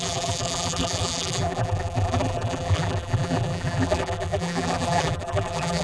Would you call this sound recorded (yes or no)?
no